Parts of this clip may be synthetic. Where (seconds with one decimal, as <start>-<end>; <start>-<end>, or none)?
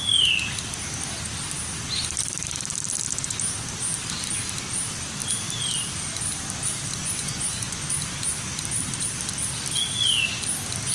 7.0-7.9